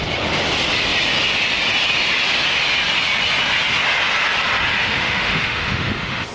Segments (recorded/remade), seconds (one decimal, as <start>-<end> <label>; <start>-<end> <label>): 0.0-4.8 recorded; 4.8-6.3 remade